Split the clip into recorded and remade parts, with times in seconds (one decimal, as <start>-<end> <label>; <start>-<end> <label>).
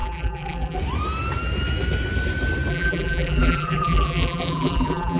0.0-0.8 remade; 0.8-2.7 recorded; 2.7-5.2 remade